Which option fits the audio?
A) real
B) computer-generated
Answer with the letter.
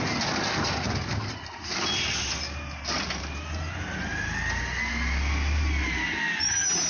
A